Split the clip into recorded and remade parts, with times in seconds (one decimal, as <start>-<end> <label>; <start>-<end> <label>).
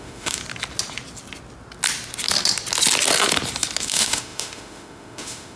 0.0-0.4 remade; 0.4-3.8 recorded; 3.8-5.6 remade